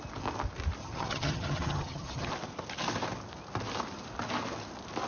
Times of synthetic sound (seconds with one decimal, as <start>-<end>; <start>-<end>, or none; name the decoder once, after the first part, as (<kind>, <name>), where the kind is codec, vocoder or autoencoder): 0.8-2.3 (vocoder, HiFi-GAN)